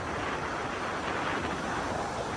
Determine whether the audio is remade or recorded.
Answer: recorded